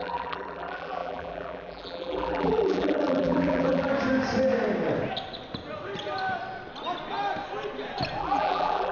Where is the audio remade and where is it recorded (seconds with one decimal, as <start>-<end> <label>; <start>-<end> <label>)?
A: 0.0-3.9 remade; 3.9-8.2 recorded; 8.2-8.9 remade